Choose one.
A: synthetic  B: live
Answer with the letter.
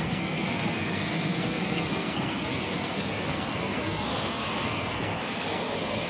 A